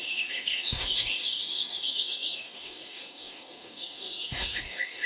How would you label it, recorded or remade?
remade